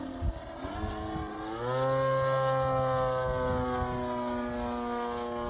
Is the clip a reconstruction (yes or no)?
no